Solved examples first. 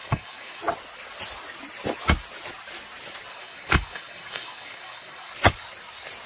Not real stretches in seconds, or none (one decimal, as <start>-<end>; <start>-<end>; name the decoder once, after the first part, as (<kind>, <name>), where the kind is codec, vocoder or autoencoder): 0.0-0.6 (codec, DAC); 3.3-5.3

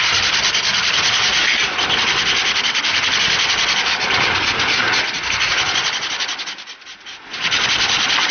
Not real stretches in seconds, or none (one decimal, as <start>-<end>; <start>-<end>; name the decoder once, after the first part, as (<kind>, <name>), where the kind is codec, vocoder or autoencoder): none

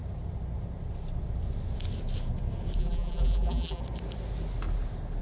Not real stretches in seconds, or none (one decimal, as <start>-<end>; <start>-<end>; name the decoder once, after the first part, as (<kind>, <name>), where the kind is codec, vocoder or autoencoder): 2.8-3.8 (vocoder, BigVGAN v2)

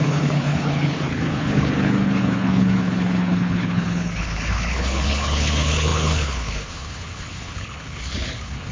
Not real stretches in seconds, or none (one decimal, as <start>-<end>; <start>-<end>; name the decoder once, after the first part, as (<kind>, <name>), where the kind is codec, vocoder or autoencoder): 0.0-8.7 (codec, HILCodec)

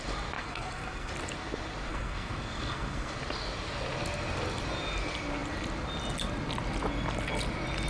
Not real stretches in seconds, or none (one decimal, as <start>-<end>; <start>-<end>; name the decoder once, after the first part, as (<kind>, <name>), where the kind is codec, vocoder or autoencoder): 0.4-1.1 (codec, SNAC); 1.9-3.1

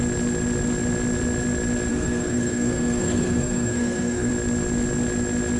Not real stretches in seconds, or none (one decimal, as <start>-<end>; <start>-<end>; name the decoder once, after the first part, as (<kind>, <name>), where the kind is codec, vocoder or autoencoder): 1.9-4.3 (codec, SNAC)

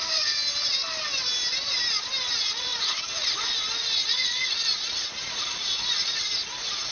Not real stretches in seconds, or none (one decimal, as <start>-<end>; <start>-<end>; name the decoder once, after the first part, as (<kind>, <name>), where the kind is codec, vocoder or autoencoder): 0.0-0.4 (vocoder, Vocos); 2.2-6.9

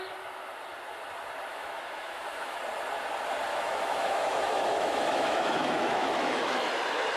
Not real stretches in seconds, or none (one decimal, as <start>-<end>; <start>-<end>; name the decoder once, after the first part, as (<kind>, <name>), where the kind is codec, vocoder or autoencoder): 1.5-2.6 (autoencoder, DAC-VAE); 3.5-6.7